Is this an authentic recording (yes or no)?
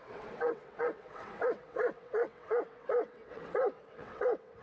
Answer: no